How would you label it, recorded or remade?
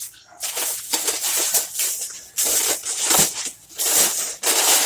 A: remade